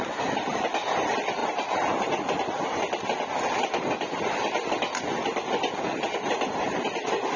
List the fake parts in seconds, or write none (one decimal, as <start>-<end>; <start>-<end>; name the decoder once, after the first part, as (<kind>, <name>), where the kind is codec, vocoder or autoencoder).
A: none